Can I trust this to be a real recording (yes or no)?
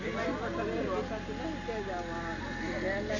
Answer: yes